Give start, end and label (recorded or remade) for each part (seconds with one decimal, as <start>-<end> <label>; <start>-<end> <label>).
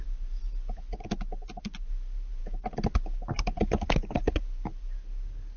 0.0-5.6 recorded